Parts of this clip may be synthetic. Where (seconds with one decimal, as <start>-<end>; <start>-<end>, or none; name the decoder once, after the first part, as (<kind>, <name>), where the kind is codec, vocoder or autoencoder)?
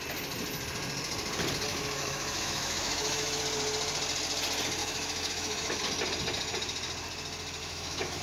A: 1.7-3.4 (autoencoder, DAC-VAE); 4.8-5.8; 7.6-8.2